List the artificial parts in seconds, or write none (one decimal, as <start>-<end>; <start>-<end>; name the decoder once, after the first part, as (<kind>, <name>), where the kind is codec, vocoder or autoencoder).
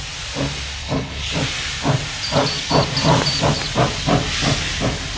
0.8-1.3 (codec, HILCodec)